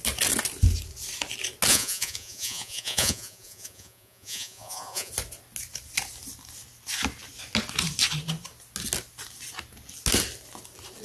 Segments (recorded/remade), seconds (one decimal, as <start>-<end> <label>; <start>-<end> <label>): 0.0-1.7 recorded; 1.7-5.1 remade; 5.1-11.0 recorded